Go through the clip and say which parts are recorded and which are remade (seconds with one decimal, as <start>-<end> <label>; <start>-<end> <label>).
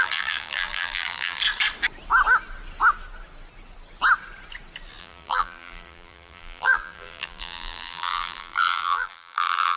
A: 0.0-1.4 remade; 1.4-5.0 recorded; 5.0-9.8 remade